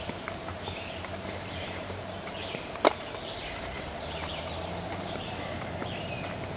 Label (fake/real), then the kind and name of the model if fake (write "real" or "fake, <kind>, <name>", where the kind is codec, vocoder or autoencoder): fake, vocoder, BigVGAN v2